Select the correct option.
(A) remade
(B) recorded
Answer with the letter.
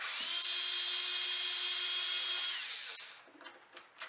B